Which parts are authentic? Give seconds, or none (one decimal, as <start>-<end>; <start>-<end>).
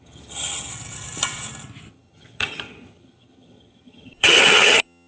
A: 0.7-1.9